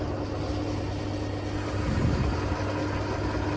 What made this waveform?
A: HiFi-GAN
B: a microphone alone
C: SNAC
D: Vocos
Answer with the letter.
B